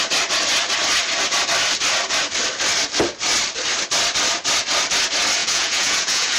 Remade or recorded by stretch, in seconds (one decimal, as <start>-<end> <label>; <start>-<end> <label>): 0.0-5.4 recorded; 5.4-6.4 remade